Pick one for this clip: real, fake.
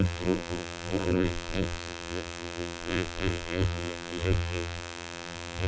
fake